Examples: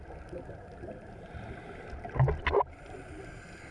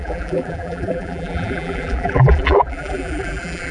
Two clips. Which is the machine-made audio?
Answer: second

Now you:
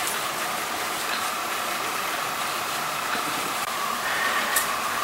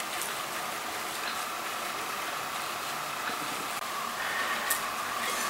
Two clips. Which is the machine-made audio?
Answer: first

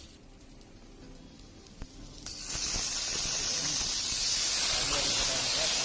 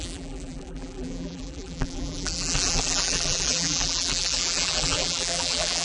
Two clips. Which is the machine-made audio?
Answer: second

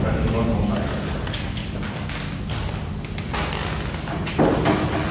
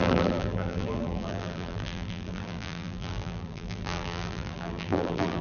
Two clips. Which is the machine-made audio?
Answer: second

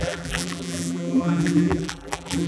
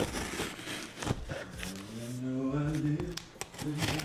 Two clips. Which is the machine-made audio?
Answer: first